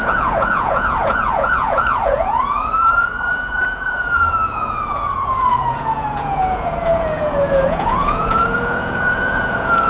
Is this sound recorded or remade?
remade